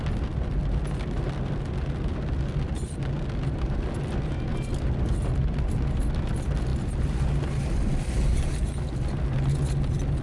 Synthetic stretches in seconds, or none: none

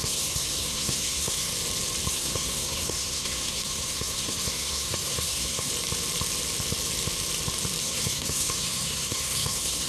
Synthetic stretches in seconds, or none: 0.0-1.5; 2.1-5.7; 7.8-9.9

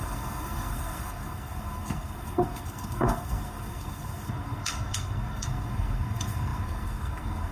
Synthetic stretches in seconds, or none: 0.0-7.5

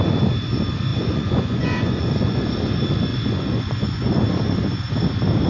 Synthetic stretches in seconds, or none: 0.9-2.5; 3.1-4.2

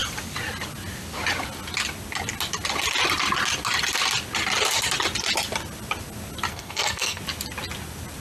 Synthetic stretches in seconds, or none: 6.5-7.2

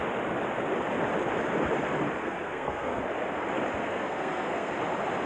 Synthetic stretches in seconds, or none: 2.2-3.0; 3.8-4.7

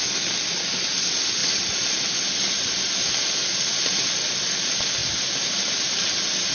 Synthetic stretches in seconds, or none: 5.0-5.9